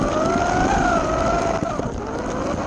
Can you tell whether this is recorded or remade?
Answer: recorded